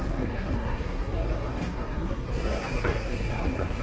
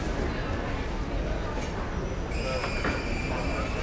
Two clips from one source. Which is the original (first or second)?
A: second